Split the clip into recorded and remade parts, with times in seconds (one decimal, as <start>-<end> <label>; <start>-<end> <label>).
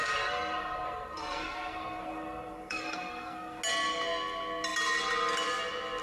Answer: 0.0-3.6 remade; 3.6-6.0 recorded